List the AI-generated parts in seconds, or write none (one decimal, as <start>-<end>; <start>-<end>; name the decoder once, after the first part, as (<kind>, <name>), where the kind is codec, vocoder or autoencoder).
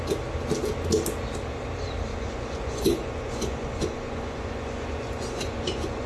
2.1-6.1 (vocoder, Vocos)